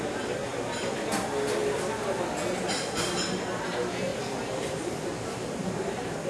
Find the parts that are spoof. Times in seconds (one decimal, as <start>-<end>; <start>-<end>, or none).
4.1-6.3

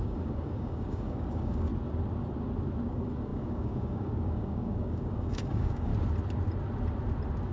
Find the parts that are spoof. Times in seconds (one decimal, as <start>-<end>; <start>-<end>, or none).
0.0-1.7; 2.9-5.9

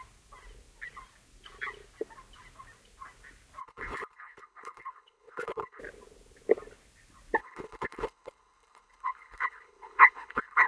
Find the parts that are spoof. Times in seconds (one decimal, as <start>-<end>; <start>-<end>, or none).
3.6-5.8; 7.4-10.7

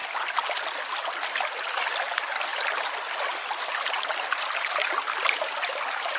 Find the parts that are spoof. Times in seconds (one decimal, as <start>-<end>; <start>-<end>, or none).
none

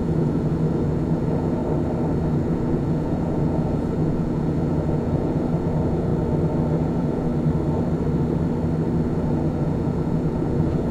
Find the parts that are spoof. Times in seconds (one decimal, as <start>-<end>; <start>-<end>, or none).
0.0-1.6; 2.3-6.1; 6.7-7.3; 9.1-10.9

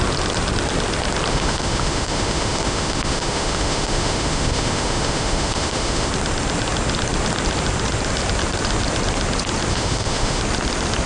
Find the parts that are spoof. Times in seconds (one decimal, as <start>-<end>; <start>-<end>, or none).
1.3-6.1; 9.7-10.4

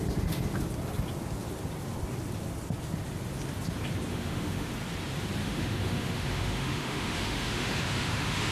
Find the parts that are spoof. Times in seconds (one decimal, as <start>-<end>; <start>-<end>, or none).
4.1-4.7; 5.4-8.5